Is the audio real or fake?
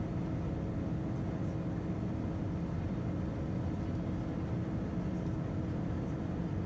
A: real